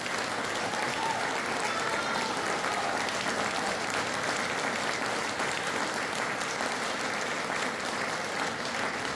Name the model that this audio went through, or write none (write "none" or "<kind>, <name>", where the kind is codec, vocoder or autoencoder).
none